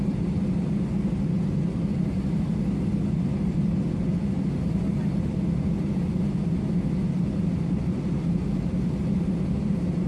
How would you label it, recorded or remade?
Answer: recorded